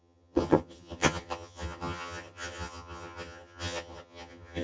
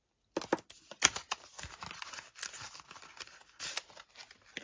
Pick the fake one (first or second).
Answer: first